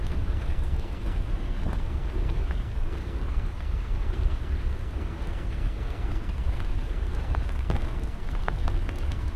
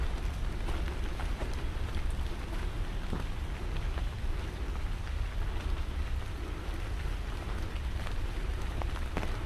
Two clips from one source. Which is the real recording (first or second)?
second